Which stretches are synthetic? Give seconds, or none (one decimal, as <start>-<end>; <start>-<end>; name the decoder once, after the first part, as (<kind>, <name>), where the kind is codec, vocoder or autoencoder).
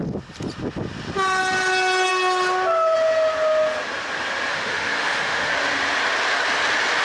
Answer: 4.5-5.5 (autoencoder, DAC-VAE)